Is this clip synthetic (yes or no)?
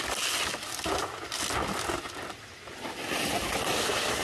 no